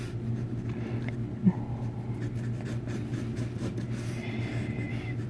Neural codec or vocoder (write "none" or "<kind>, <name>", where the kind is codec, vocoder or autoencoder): none